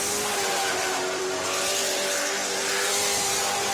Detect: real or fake fake